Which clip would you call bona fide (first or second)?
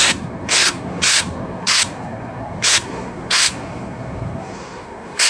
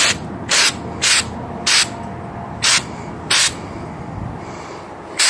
second